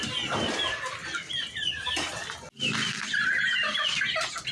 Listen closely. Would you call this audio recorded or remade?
recorded